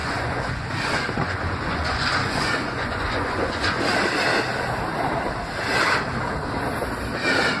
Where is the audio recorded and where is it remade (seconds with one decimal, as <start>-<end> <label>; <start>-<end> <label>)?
0.0-3.8 remade; 3.8-7.6 recorded